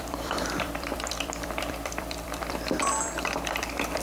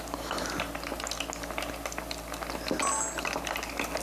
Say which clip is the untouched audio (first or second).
second